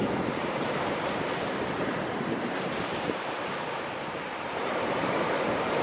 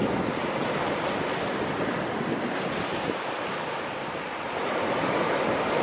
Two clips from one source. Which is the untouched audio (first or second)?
second